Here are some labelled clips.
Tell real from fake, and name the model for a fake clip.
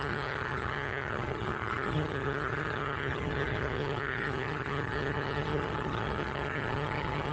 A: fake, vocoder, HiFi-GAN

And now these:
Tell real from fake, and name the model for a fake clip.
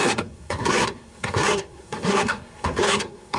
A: fake, codec, SNAC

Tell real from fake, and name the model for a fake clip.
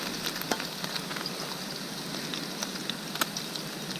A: real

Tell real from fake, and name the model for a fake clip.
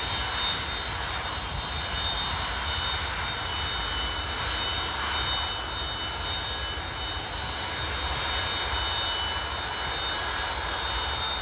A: real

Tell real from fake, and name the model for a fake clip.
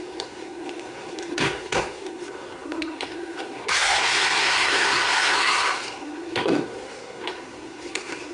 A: fake, codec, SNAC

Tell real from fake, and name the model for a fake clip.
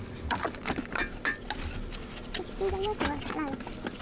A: real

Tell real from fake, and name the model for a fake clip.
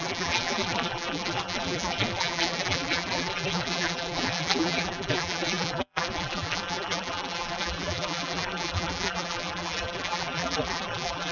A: fake, vocoder, BigVGAN v2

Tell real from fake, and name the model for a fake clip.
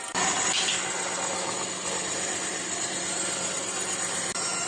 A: real